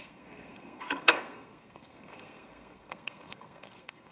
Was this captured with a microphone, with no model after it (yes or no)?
no